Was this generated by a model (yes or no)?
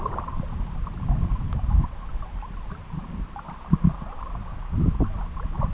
no